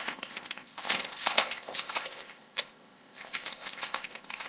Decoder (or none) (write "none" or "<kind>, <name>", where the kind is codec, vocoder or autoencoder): codec, ZipCodec